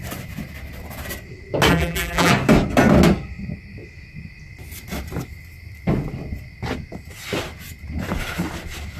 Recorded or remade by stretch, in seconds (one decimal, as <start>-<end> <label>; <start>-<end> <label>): 0.0-1.7 recorded; 1.7-2.3 remade; 2.3-9.0 recorded